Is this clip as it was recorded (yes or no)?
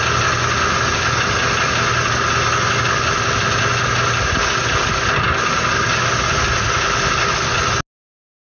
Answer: yes